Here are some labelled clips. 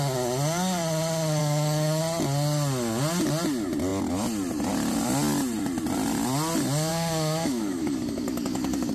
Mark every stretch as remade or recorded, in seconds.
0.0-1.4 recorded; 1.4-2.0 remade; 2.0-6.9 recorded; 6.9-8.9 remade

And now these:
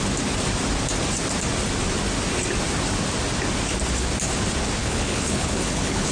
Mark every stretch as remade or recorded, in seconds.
0.0-4.8 recorded; 4.8-6.1 remade

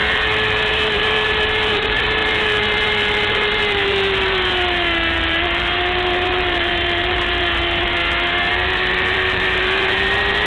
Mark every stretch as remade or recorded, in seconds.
0.0-8.0 remade; 8.0-8.5 recorded; 8.5-10.5 remade

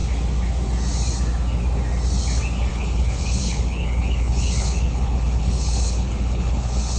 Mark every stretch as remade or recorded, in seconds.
0.0-2.7 recorded; 2.7-7.0 remade

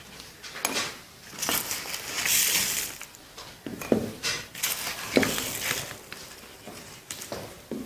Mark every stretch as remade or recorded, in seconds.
0.0-7.9 recorded

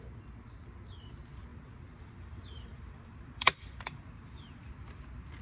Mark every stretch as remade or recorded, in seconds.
0.0-1.5 recorded; 1.5-4.7 remade; 4.7-5.4 recorded

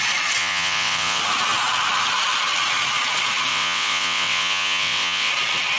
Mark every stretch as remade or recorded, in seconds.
0.0-0.4 recorded; 0.4-1.2 remade; 1.2-3.5 recorded; 3.5-5.3 remade; 5.3-5.8 recorded

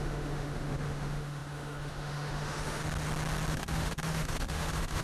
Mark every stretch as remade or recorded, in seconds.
0.0-2.8 remade; 2.8-3.5 recorded; 3.5-5.0 remade